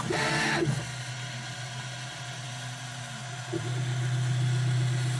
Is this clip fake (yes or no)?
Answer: no